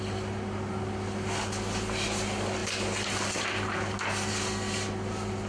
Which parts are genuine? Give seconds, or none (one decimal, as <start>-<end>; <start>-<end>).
0.0-5.5